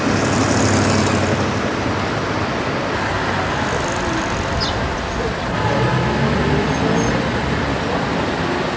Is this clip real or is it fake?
real